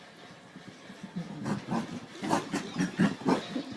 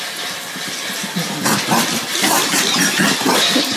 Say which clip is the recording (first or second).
first